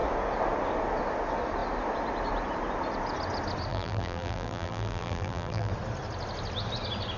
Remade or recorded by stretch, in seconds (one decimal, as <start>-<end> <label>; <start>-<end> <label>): 0.0-3.7 recorded; 3.7-5.7 remade; 5.7-7.2 recorded